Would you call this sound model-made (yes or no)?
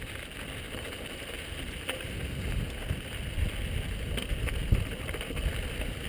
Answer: no